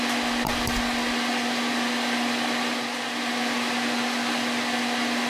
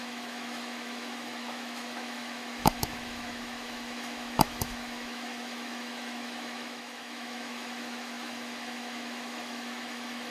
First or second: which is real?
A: first